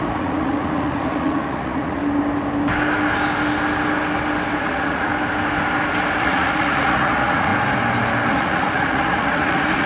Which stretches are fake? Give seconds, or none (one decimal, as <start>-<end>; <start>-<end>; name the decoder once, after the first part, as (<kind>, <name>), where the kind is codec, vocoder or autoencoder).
0.0-2.0 (vocoder, Vocos); 4.6-5.1; 6.2-7.5; 8.3-9.9